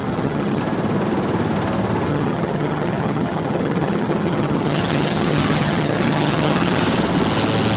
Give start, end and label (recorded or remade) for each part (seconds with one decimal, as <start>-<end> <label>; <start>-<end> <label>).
0.0-0.6 remade; 0.6-2.1 recorded; 2.1-6.8 remade; 6.8-7.8 recorded